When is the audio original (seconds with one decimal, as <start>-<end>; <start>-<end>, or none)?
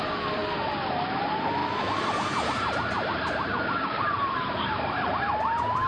0.0-1.6; 5.1-5.9